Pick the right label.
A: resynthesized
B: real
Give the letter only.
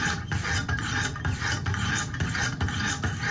B